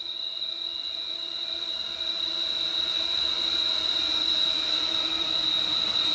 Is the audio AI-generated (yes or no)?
yes